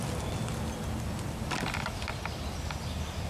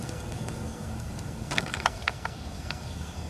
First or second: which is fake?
second